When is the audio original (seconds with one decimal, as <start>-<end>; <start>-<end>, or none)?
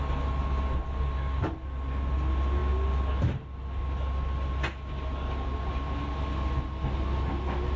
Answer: 0.0-7.8